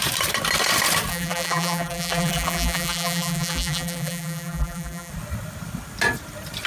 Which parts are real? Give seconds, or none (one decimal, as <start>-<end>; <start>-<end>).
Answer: 0.0-1.1; 5.1-6.7